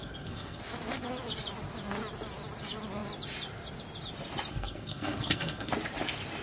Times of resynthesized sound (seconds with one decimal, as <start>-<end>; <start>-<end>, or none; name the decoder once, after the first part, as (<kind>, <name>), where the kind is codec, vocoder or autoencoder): 0.0-0.6 (codec, SNAC); 4.5-5.7